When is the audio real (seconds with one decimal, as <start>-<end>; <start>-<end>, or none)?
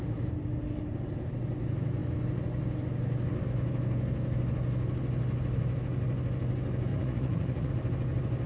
0.0-6.9; 7.7-8.5